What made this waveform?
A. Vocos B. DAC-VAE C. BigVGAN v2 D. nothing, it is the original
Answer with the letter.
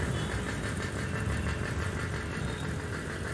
D